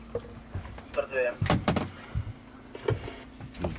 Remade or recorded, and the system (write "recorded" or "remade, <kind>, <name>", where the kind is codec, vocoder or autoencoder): recorded